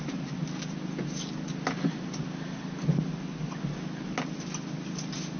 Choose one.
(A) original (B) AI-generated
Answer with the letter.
A